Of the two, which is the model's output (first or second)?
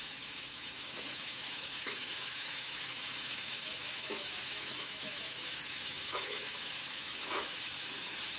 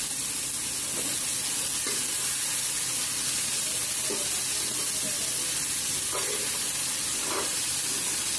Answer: first